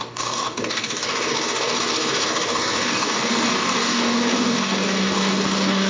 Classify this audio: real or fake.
fake